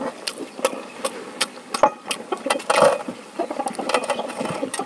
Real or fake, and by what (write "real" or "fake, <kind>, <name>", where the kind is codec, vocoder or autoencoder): real